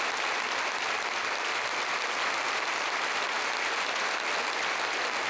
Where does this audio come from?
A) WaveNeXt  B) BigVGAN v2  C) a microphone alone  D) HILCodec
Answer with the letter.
C